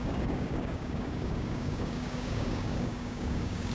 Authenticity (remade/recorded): remade